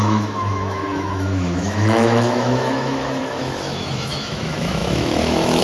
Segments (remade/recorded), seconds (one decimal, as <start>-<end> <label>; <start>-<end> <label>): 0.0-5.6 remade